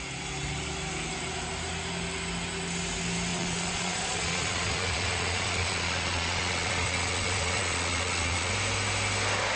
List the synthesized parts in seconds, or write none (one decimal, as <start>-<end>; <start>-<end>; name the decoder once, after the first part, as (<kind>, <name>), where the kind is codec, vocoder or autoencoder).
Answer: 3.3-8.5 (vocoder, Vocos)